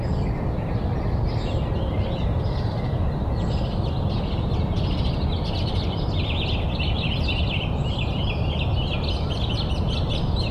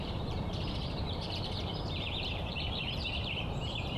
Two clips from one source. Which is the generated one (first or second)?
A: second